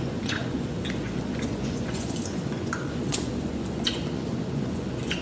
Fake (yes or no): yes